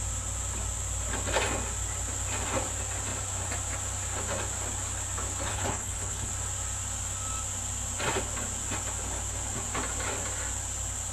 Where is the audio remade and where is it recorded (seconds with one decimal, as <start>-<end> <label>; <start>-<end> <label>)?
0.0-5.5 recorded; 5.5-6.3 remade; 6.3-11.1 recorded